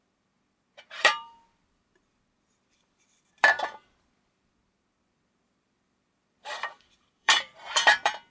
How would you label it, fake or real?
fake